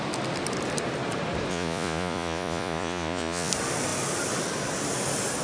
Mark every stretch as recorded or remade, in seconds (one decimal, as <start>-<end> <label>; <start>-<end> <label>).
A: 0.0-1.5 recorded; 1.5-3.5 remade; 3.5-5.4 recorded